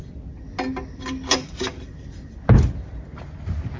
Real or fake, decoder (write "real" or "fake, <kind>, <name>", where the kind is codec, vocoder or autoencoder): real